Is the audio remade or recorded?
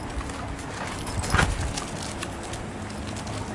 recorded